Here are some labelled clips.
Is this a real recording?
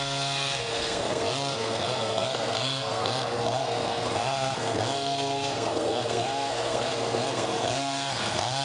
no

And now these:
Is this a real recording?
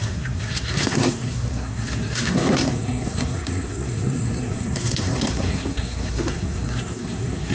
no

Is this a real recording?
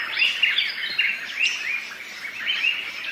yes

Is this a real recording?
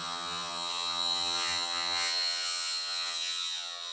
no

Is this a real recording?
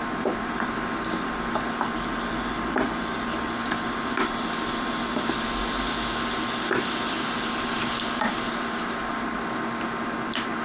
yes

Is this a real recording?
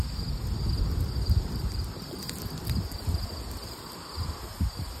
yes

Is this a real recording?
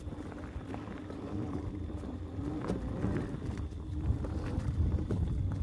no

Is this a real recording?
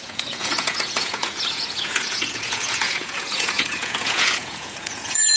no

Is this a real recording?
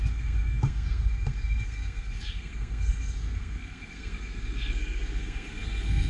no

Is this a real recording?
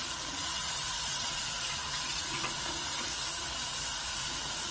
no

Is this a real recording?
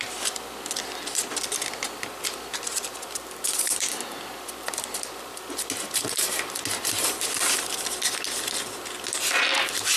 yes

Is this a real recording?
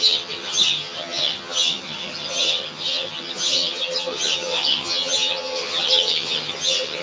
no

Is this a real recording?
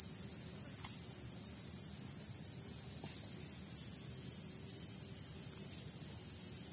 yes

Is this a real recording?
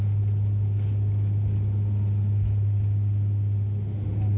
yes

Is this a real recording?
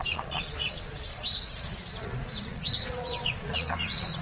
no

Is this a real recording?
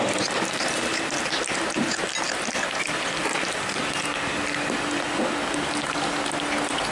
yes